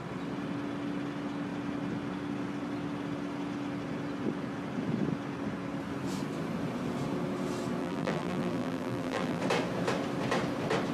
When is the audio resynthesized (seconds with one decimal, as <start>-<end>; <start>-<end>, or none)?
7.8-9.4